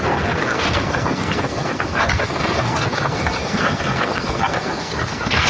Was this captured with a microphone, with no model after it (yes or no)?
no